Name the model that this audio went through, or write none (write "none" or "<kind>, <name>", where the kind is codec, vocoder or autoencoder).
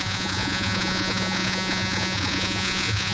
vocoder, Vocos